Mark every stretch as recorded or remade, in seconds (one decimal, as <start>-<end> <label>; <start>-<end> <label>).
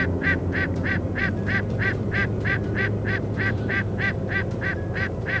0.0-1.2 recorded; 1.2-3.7 remade; 3.7-5.4 recorded